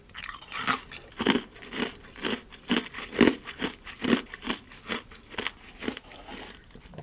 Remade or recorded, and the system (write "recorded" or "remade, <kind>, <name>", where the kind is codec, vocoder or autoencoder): recorded